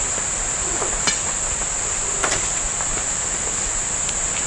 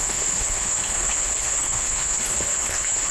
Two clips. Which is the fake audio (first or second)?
second